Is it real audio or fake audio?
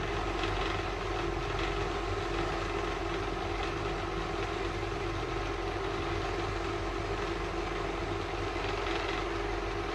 real